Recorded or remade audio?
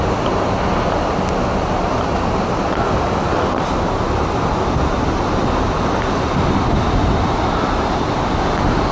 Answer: recorded